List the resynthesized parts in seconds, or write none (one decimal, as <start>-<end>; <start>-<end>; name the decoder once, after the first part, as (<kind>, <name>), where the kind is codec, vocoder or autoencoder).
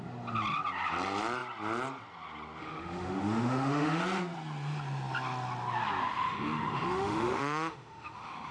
2.6-4.0 (autoencoder, DAC-VAE); 6.0-8.5